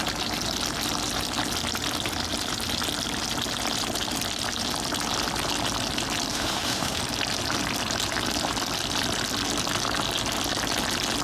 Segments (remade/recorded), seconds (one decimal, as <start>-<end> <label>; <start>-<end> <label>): 0.0-6.3 recorded; 6.3-7.0 remade; 7.0-11.2 recorded